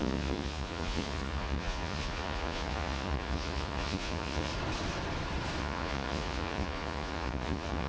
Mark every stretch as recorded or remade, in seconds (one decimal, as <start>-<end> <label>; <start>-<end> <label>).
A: 0.0-4.5 remade; 4.5-5.6 recorded; 5.6-7.9 remade